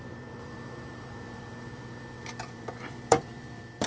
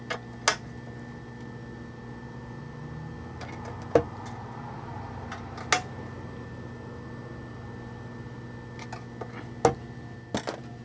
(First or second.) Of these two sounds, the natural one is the second